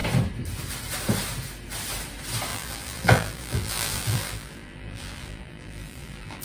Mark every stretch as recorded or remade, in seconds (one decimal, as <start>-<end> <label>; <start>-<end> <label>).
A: 0.0-2.5 recorded; 2.5-6.4 remade